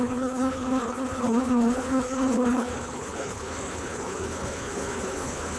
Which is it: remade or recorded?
remade